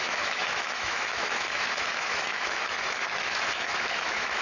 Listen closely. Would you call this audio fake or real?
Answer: fake